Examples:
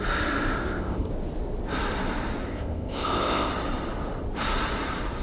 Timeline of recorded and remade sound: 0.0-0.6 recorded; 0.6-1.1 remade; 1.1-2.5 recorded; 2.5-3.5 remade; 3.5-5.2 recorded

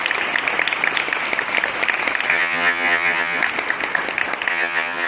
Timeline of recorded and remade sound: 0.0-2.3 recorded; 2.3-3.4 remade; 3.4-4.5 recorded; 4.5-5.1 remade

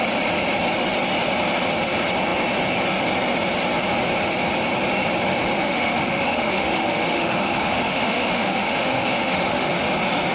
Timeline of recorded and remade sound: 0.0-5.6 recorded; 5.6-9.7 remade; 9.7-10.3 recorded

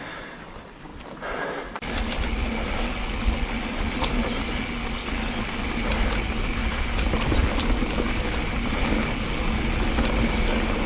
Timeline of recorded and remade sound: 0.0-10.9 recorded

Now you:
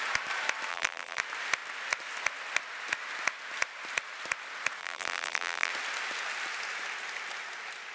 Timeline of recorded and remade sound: 0.0-0.7 recorded; 0.7-1.2 remade; 1.2-4.8 recorded; 4.8-5.7 remade; 5.7-7.9 recorded

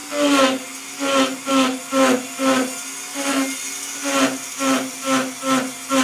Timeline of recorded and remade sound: 0.0-6.0 recorded